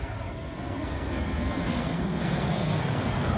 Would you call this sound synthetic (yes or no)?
yes